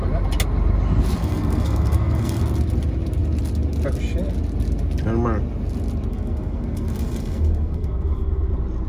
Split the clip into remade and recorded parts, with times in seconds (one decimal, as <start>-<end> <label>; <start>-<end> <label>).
0.0-1.2 recorded; 1.2-2.4 remade; 2.4-6.1 recorded; 6.1-8.5 remade; 8.5-8.9 recorded